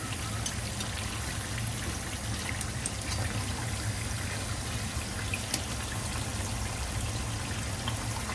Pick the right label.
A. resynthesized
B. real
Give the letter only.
B